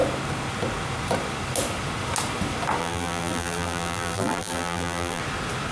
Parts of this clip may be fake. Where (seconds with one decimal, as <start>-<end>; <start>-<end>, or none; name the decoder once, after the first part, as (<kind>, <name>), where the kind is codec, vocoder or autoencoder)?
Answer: 2.8-5.2 (vocoder, BigVGAN v2)